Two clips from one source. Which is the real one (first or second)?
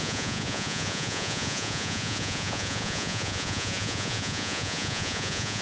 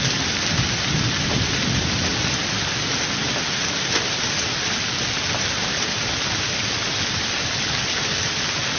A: second